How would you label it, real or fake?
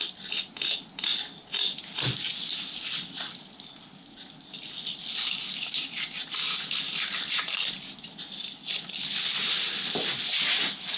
real